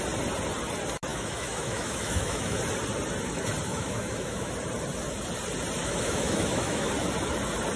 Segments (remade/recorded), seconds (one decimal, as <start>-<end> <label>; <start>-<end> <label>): 0.0-1.1 recorded; 1.1-2.6 remade; 2.6-3.7 recorded; 3.7-4.5 remade; 4.5-5.8 recorded; 5.8-6.9 remade; 6.9-7.8 recorded